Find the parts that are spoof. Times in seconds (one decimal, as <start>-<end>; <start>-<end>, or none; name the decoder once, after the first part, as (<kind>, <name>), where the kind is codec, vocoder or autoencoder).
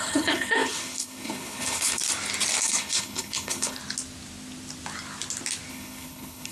0.0-2.0 (codec, HILCodec); 2.6-3.8; 5.7-6.5